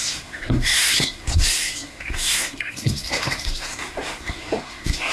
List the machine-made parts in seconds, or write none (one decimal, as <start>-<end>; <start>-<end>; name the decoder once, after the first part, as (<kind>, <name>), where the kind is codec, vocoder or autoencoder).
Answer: 0.0-5.1 (codec, SNAC)